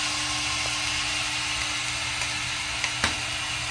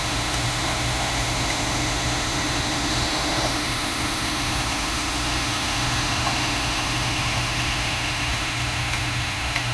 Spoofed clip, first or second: second